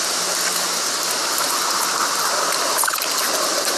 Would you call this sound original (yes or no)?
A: yes